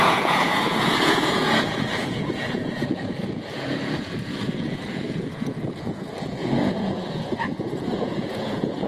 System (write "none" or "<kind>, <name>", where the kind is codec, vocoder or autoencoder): vocoder, Vocos